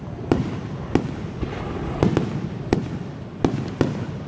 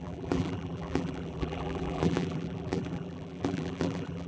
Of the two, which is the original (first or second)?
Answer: first